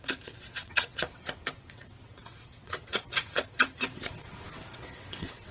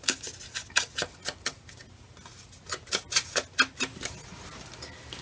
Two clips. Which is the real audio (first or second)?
second